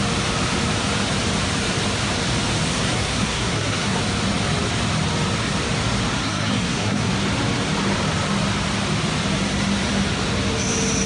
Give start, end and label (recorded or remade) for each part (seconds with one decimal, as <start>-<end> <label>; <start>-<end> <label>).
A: 0.0-2.7 recorded; 2.7-4.0 remade; 4.0-6.2 recorded; 6.2-7.1 remade; 7.1-11.1 recorded